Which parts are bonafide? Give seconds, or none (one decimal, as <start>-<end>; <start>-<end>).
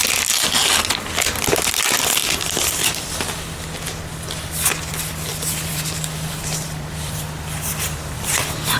0.0-2.2; 3.1-5.3; 8.3-8.8